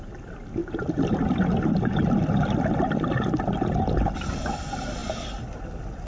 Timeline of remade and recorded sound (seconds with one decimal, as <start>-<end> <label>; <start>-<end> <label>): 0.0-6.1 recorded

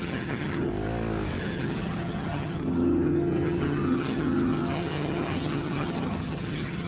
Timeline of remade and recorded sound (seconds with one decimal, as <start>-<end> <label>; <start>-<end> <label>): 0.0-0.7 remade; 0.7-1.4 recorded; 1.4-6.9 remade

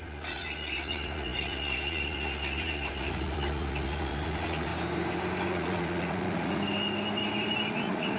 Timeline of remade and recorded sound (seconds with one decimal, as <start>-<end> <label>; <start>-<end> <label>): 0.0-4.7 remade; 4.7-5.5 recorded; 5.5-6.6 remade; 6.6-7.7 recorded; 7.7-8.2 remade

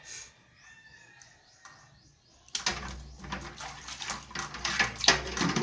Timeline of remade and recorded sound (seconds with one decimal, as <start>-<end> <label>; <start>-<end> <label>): 0.0-5.6 recorded